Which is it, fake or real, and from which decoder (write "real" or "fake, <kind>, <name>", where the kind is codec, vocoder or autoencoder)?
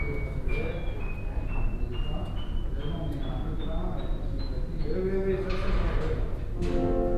real